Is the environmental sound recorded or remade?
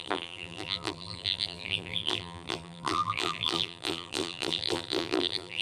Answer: remade